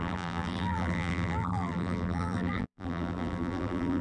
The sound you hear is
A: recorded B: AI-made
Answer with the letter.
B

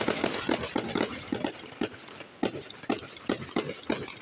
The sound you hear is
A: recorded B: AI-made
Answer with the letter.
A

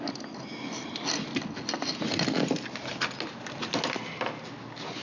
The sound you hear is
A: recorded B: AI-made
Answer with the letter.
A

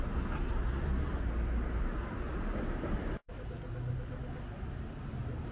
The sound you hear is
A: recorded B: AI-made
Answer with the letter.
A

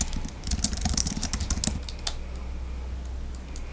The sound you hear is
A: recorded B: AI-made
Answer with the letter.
A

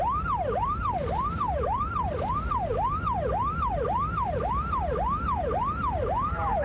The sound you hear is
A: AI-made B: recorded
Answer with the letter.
A